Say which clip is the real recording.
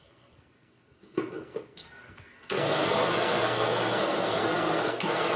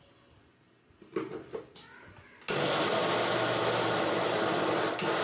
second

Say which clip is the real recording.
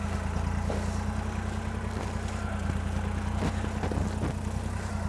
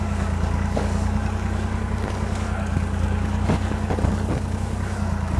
first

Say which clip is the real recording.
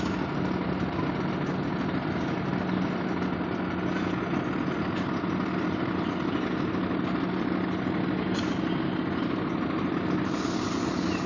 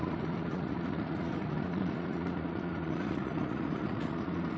first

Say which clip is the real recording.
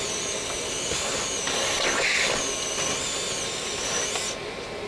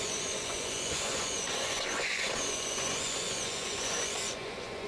first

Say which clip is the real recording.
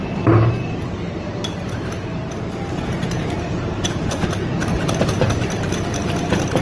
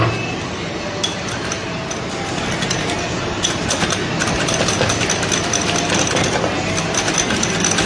second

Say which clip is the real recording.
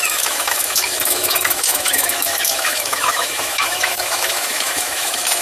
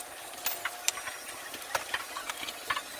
second